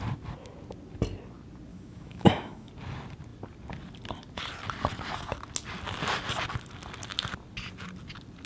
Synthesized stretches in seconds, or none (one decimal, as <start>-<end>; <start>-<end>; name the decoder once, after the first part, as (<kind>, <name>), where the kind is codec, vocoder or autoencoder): 1.7-2.7 (autoencoder, DAC-VAE)